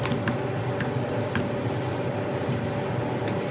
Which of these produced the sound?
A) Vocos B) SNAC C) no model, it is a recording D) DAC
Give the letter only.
C